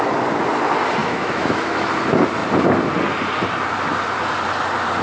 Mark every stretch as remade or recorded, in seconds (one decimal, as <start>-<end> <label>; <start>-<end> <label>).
0.0-1.0 recorded; 1.0-1.9 remade; 1.9-5.0 recorded